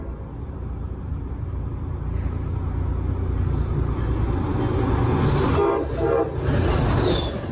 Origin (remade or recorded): recorded